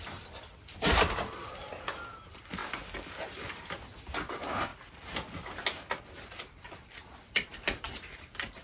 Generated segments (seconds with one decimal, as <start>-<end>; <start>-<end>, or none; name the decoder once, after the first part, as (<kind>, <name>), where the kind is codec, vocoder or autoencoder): 0.0-1.7 (vocoder, BigVGAN v2); 2.2-2.6; 4.3-4.7; 5.9-8.6